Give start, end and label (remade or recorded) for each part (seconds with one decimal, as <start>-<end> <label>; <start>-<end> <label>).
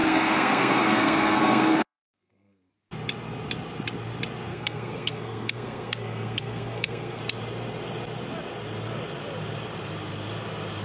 0.0-2.7 remade; 2.7-4.5 recorded; 4.5-7.2 remade; 7.2-10.8 recorded